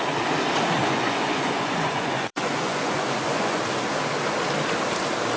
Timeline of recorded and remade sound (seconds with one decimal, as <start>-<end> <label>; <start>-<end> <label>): 0.0-0.8 recorded; 0.8-3.6 remade; 3.6-5.4 recorded